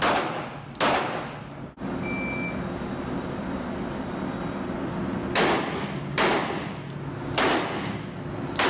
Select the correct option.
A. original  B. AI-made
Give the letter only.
A